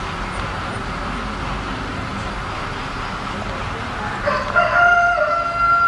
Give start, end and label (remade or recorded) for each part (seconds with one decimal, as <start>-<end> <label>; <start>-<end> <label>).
0.0-5.9 recorded